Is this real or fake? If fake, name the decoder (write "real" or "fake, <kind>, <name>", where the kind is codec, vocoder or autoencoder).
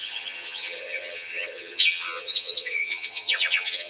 fake, vocoder, HiFi-GAN